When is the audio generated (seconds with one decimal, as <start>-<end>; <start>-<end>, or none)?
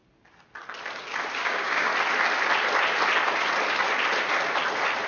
1.4-1.9